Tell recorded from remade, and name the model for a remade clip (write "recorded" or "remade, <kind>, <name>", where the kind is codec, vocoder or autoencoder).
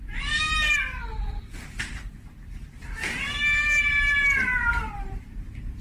remade, vocoder, BigVGAN v2